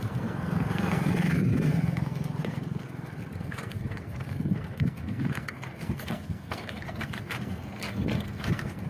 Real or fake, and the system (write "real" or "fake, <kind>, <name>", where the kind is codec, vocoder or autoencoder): fake, codec, SNAC